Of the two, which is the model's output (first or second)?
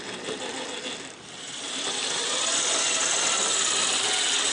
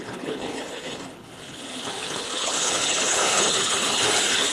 second